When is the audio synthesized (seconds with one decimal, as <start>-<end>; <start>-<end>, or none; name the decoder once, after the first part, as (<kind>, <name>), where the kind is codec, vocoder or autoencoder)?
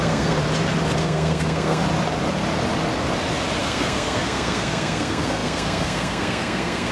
0.0-0.4 (codec, SNAC); 1.0-1.8; 3.6-6.9